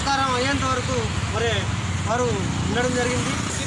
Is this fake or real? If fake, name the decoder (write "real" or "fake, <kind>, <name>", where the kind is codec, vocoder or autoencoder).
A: real